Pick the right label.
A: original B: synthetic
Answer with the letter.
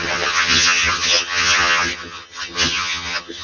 B